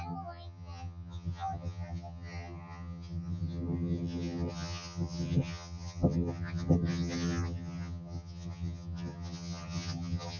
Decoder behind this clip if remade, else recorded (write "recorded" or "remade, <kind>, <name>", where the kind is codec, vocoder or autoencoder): remade, vocoder, HiFi-GAN